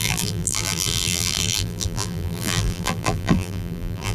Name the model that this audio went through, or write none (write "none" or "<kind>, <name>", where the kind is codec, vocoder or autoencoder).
vocoder, BigVGAN v2